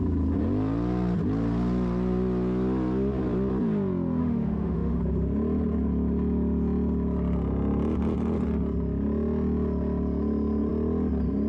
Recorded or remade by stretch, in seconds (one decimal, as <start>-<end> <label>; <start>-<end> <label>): 0.0-4.2 recorded; 4.2-5.0 remade; 5.0-11.5 recorded